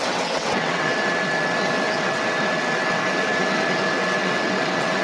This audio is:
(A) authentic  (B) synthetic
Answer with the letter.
B